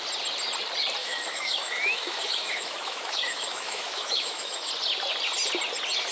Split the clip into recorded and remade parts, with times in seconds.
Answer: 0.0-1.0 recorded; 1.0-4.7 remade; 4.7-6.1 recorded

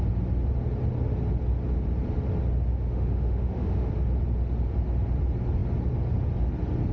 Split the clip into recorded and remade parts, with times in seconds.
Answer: 0.0-2.7 recorded; 2.7-3.9 remade; 3.9-6.9 recorded

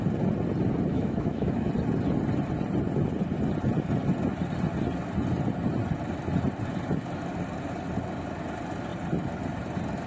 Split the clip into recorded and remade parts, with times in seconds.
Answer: 0.0-0.9 recorded; 0.9-1.7 remade; 1.7-10.1 recorded

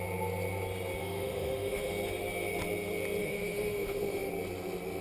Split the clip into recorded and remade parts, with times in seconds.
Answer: 0.0-1.0 recorded; 1.0-1.9 remade; 1.9-3.2 recorded; 3.2-4.3 remade; 4.3-5.0 recorded

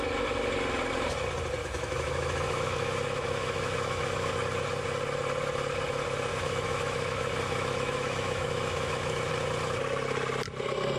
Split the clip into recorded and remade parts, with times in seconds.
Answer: 0.0-1.6 recorded; 1.6-4.3 remade; 4.3-6.3 recorded; 6.3-9.3 remade; 9.3-11.0 recorded